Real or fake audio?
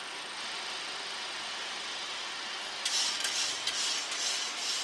real